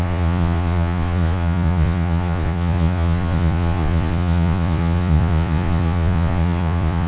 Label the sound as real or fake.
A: fake